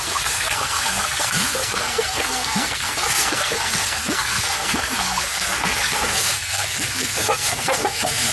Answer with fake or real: fake